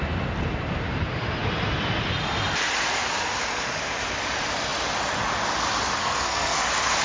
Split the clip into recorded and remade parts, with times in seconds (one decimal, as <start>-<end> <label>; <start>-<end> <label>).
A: 0.0-6.0 recorded; 6.0-6.6 remade; 6.6-7.0 recorded